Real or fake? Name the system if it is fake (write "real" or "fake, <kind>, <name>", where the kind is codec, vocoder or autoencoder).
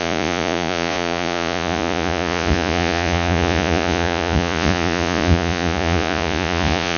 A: fake, vocoder, Vocos